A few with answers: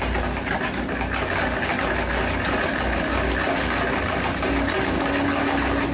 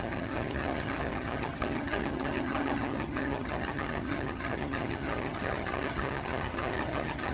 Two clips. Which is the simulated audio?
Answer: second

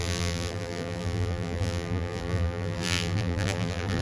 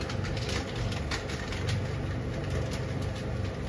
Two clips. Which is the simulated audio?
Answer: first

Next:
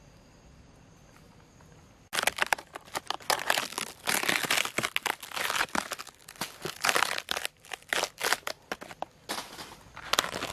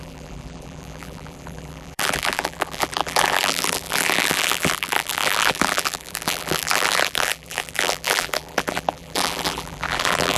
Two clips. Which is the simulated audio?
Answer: second